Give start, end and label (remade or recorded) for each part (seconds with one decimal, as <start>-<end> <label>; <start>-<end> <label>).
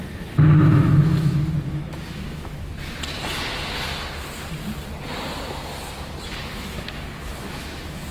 0.0-2.7 remade; 2.7-6.2 recorded; 6.2-8.1 remade